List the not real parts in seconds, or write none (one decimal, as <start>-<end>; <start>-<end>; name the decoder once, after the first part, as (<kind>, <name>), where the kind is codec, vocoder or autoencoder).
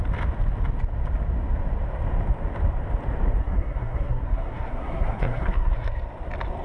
3.4-6.0 (codec, SNAC)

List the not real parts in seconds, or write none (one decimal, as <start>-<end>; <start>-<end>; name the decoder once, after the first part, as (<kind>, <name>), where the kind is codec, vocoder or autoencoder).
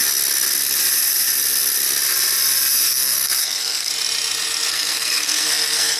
2.7-3.9 (codec, SNAC); 4.7-6.0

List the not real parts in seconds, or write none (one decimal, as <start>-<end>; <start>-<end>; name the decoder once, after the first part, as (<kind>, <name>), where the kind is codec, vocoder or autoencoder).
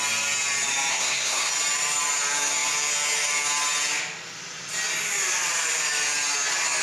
0.9-1.5 (codec, SNAC)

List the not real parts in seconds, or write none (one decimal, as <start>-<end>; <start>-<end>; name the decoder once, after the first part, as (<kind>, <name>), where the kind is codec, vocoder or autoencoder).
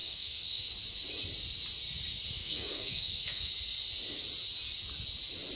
0.0-0.7 (codec, SNAC); 2.4-3.5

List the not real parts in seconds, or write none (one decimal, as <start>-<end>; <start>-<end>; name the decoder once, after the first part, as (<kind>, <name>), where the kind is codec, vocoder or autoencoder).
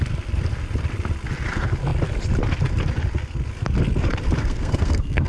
4.4-5.3 (codec, SNAC)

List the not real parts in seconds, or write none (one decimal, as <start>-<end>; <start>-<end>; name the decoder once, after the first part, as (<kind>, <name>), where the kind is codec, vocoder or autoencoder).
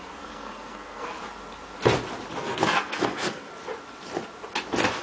0.0-1.2 (codec, SNAC); 2.4-3.5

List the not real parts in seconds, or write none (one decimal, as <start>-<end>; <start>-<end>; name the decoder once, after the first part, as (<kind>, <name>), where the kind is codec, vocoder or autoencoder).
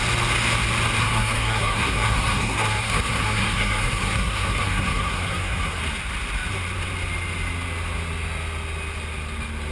1.0-5.8 (codec, SNAC)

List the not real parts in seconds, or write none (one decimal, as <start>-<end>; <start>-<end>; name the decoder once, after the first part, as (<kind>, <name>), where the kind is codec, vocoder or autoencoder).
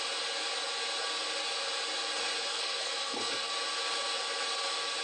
2.5-3.5 (codec, SNAC)